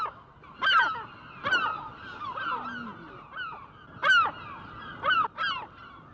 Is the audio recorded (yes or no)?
yes